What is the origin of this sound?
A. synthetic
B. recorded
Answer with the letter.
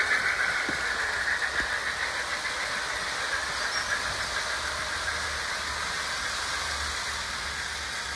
B